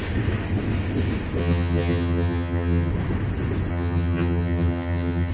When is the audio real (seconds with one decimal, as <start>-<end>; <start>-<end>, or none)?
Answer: 0.0-1.4; 2.9-3.7